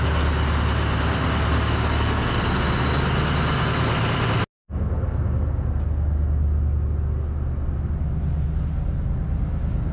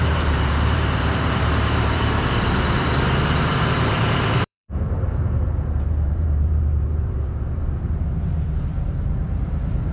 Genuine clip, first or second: first